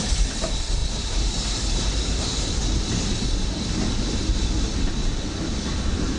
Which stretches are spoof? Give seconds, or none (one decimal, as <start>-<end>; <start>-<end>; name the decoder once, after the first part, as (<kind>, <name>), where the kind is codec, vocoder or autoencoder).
0.8-2.9 (vocoder, BigVGAN v2)